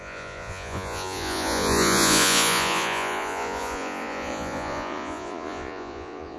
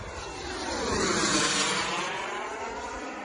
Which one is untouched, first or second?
second